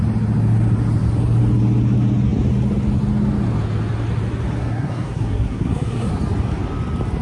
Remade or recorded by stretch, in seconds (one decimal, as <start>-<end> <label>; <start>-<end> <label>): 0.0-4.6 recorded; 4.6-6.1 remade; 6.1-7.2 recorded